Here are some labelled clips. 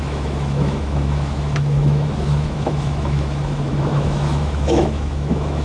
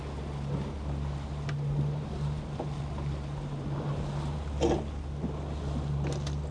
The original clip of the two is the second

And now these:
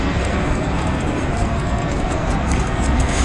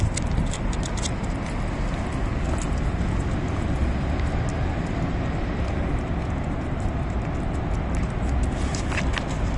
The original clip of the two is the second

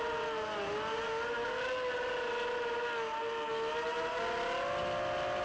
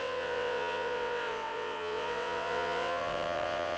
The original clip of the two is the first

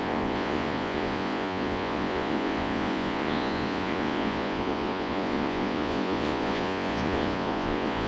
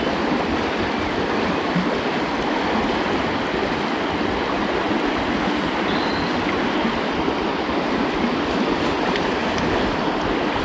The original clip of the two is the second